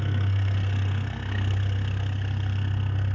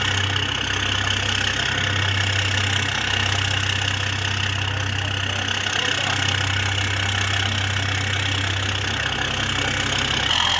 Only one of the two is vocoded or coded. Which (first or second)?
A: first